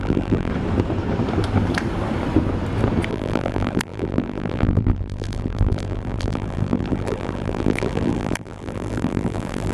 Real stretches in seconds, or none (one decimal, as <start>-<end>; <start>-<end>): 0.5-3.1